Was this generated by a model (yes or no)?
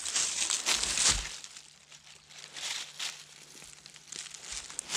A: no